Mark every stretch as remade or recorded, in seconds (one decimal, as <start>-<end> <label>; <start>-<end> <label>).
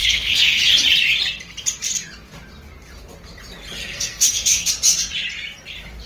0.0-0.6 remade; 0.6-3.8 recorded; 3.8-4.7 remade; 4.7-6.1 recorded